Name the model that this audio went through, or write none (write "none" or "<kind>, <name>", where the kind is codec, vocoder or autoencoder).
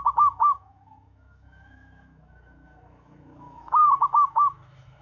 autoencoder, DAC-VAE